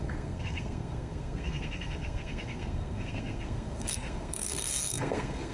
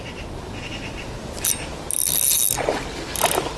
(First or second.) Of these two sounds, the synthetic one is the first